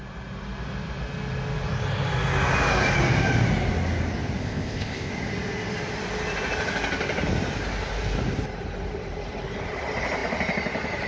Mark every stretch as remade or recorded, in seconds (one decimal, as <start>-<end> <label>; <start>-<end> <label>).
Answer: 0.0-4.4 recorded; 4.4-5.1 remade; 5.1-11.1 recorded